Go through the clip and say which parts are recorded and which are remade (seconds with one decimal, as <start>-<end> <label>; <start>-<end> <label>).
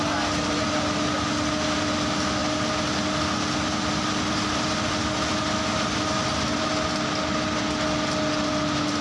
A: 0.0-9.0 recorded